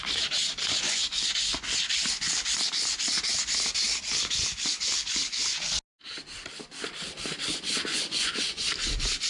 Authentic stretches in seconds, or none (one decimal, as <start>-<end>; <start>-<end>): 0.0-0.4; 1.5-7.9; 8.7-9.3